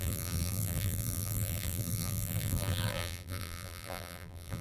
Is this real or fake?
fake